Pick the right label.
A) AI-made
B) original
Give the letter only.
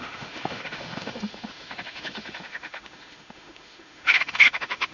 A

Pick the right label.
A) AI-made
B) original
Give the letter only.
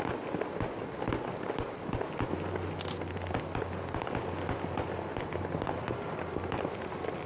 B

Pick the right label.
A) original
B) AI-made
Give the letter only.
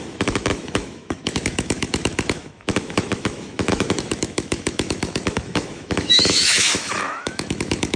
B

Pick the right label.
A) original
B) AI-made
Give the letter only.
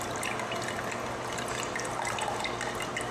A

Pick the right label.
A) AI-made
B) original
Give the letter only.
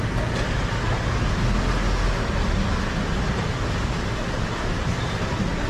B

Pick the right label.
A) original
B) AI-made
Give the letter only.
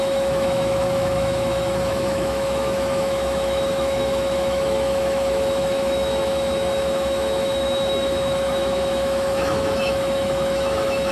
B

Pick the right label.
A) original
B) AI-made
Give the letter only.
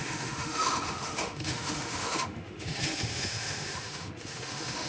B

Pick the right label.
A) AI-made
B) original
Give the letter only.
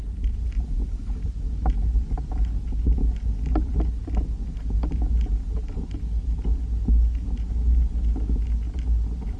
B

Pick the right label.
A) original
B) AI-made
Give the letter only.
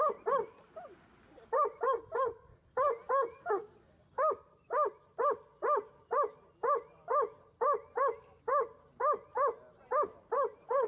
A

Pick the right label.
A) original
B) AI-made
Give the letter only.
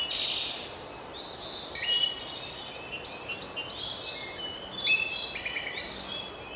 A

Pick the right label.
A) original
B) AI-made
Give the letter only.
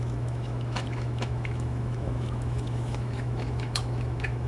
B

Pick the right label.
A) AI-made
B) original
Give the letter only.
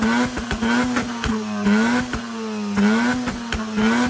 B